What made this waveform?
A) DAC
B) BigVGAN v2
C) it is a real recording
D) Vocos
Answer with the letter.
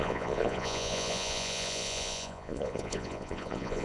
D